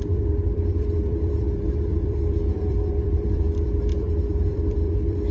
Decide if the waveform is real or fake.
fake